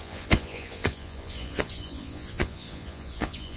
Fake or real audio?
fake